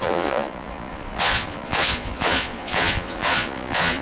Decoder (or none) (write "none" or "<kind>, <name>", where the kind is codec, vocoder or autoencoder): vocoder, Vocos